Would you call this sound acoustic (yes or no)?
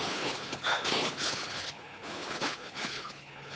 no